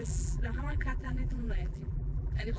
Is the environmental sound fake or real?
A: fake